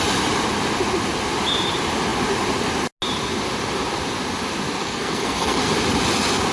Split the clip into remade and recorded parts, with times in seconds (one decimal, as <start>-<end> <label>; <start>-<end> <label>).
0.0-4.8 recorded; 4.8-5.7 remade; 5.7-6.5 recorded